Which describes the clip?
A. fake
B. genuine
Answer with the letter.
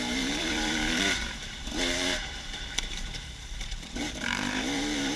A